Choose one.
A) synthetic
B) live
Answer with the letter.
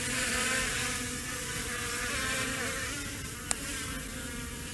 A